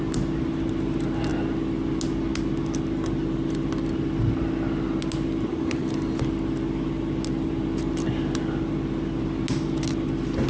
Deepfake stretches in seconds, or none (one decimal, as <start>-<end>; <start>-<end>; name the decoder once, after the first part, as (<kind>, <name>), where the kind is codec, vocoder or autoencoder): none